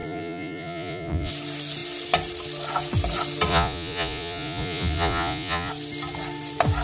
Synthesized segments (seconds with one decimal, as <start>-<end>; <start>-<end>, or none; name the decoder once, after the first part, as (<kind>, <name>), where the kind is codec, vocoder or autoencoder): 0.0-1.3 (vocoder, Vocos); 3.5-5.7